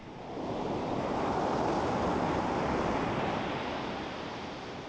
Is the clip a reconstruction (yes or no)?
no